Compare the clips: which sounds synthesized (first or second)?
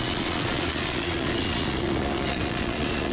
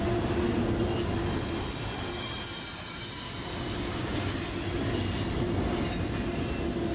first